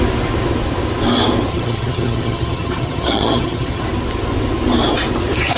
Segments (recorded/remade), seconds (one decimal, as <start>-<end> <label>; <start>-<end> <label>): 0.0-1.5 recorded; 1.5-3.8 remade; 3.8-5.6 recorded